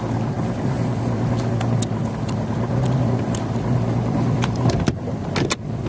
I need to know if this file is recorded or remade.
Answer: recorded